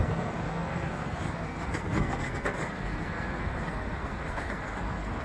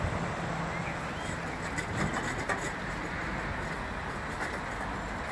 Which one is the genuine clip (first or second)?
second